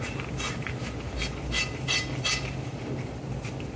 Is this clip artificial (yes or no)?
no